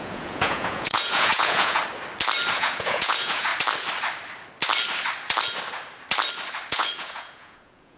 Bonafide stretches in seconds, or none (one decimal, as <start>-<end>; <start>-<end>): 1.8-2.5; 3.5-6.7